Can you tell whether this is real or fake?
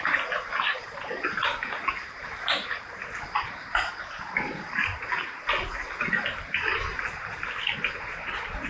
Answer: real